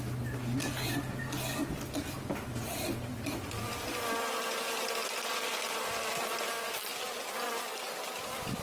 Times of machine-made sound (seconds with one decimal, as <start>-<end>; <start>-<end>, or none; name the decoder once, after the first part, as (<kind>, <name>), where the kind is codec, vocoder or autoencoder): none